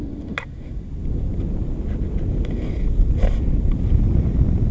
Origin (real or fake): real